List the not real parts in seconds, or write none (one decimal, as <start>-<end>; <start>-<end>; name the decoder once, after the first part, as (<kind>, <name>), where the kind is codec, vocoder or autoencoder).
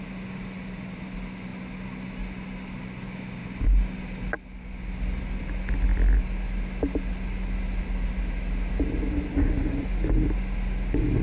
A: none